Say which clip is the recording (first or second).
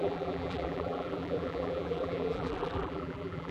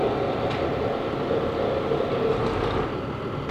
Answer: second